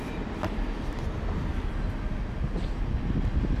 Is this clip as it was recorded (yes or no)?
yes